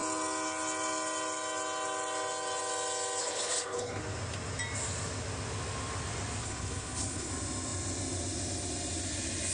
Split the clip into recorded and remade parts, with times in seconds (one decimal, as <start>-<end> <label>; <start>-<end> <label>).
0.0-3.2 recorded; 3.2-4.0 remade; 4.0-6.4 recorded; 6.4-7.3 remade; 7.3-9.5 recorded